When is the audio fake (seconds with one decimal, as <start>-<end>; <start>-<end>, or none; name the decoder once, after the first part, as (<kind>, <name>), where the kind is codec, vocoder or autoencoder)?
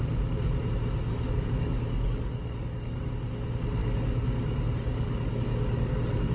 1.1-3.1 (codec, DAC); 3.8-6.3